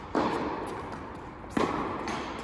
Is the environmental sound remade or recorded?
recorded